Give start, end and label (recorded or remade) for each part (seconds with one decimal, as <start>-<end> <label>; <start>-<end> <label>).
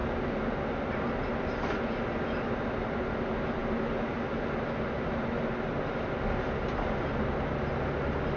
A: 0.0-8.4 recorded